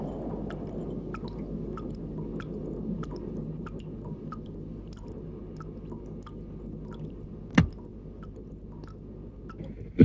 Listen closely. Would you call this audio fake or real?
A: real